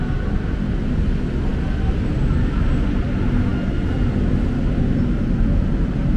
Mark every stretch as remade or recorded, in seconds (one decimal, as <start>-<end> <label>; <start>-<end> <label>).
0.0-6.2 recorded